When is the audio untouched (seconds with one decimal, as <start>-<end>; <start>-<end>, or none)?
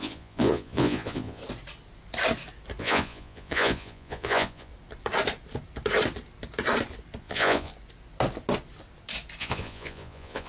1.4-2.8; 4.7-7.2; 7.7-9.4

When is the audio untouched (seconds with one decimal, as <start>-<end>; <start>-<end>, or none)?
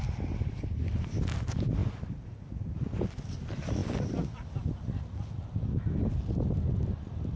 0.0-7.4